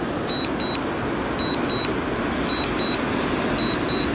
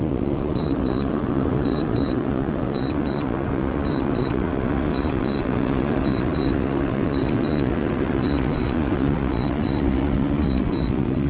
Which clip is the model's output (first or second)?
second